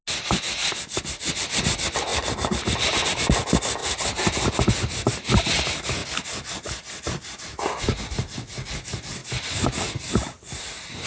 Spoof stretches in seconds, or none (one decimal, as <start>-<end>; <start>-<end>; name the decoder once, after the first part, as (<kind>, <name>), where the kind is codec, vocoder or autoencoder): none